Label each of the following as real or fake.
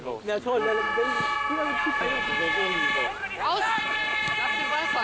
real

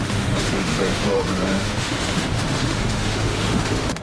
fake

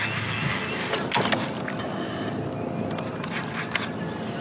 real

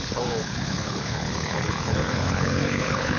fake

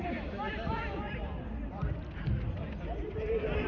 real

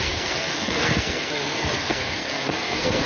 fake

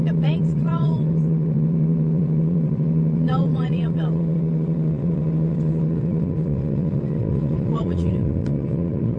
fake